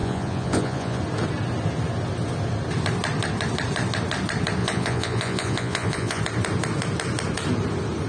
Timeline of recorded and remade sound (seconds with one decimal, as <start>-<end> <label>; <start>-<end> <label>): 0.0-1.0 remade; 1.0-4.6 recorded; 4.6-6.2 remade; 6.2-8.1 recorded